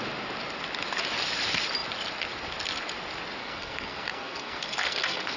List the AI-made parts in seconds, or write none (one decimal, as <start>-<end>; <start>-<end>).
3.4-5.4